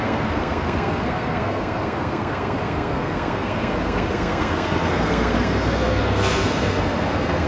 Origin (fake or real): fake